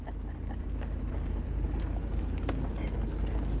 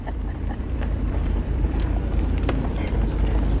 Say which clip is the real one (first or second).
first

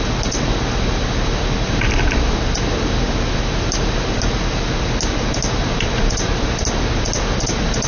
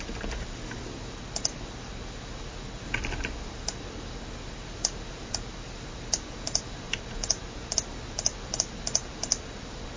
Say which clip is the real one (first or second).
first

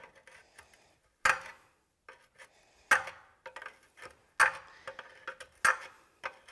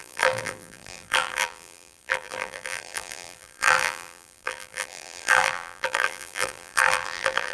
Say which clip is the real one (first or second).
first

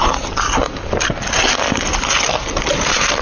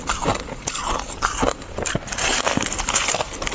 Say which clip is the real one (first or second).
first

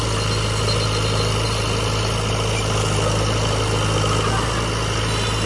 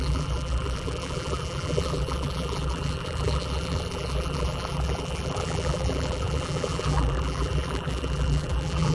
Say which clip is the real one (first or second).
first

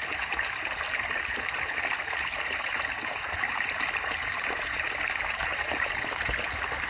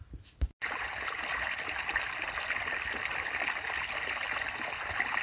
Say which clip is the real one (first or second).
second